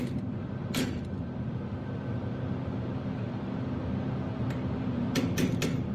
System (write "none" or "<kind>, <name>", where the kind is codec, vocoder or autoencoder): none